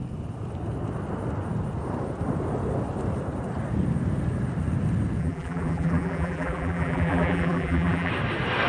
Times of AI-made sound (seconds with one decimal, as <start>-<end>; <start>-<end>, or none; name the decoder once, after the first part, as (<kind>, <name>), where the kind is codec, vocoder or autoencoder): 5.2-8.1 (vocoder, BigVGAN v2)